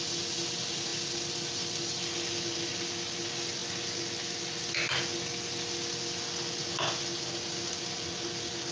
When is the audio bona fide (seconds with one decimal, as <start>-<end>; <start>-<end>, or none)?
0.0-8.7